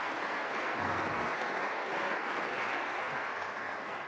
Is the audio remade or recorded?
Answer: remade